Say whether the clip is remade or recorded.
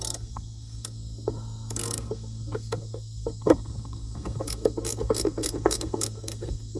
remade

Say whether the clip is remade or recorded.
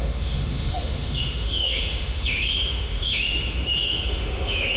remade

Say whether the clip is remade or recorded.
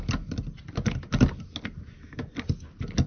recorded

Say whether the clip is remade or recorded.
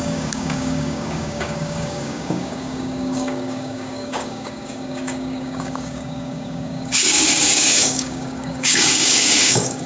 remade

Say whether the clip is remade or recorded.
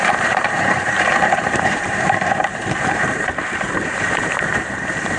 remade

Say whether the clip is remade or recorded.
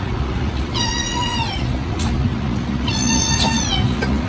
remade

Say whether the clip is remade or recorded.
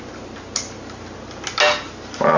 recorded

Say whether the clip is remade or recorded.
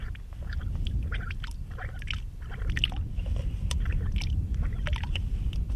recorded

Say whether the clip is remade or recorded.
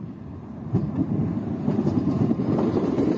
remade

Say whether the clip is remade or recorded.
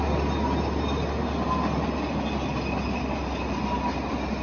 recorded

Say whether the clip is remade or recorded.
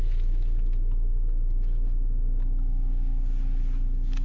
recorded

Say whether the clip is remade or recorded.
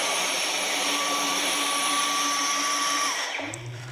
remade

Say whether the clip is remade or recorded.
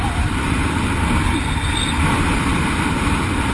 recorded